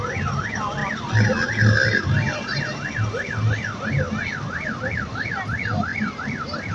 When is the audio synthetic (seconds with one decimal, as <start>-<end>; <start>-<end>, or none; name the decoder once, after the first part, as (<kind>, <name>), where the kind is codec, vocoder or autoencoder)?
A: 5.9-6.7 (vocoder, BigVGAN v2)